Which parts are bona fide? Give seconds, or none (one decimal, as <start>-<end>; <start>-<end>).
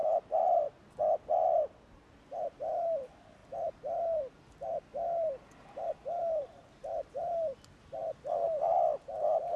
0.0-2.6; 4.9-5.9; 8.0-8.6